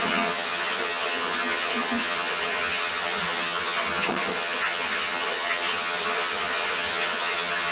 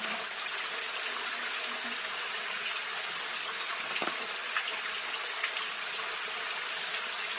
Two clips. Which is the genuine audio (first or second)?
second